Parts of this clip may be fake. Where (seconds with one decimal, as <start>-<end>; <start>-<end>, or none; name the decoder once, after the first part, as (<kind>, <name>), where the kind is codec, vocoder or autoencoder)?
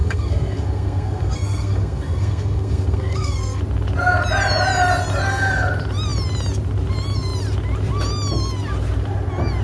0.0-3.6 (codec, SNAC)